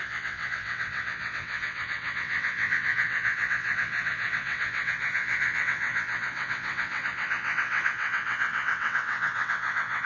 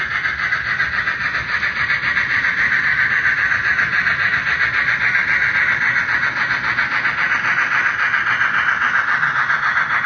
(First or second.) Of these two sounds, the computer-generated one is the first